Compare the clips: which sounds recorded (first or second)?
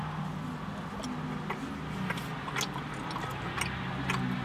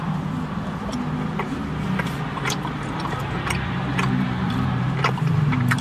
first